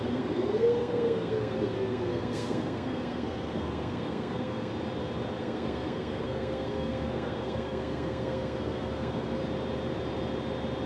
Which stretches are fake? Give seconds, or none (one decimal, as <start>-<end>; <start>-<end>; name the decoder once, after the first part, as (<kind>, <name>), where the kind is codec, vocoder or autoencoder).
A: 0.0-4.7 (codec, SNAC); 5.4-9.4